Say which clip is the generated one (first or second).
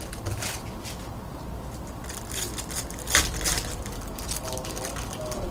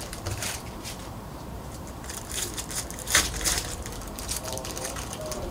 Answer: second